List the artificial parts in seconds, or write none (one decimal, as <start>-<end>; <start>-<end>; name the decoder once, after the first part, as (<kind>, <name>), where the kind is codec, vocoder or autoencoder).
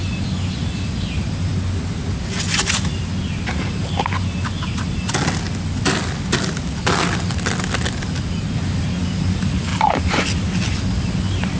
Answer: none